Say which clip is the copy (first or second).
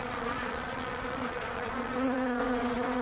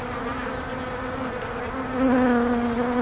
first